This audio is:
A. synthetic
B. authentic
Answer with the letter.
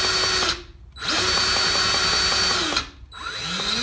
B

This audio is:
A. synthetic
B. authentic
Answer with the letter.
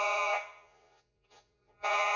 A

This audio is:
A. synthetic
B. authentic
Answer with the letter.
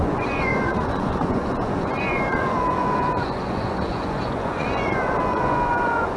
A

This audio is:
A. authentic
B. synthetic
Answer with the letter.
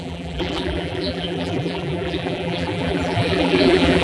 B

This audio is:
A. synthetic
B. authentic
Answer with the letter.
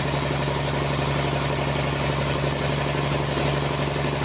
B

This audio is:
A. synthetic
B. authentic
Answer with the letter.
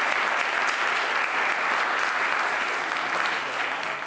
B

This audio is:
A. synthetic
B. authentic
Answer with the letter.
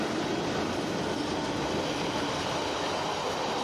B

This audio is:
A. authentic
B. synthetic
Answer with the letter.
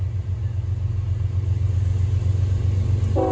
A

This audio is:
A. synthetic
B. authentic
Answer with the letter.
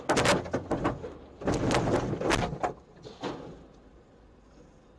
B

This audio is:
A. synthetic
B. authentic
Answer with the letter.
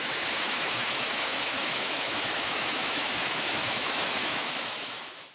A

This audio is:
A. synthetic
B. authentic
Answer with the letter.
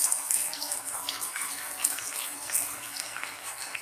A